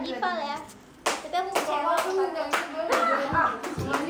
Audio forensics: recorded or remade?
recorded